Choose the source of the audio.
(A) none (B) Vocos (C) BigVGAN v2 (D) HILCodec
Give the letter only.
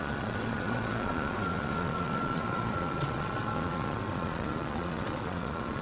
B